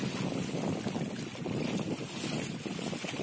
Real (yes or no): yes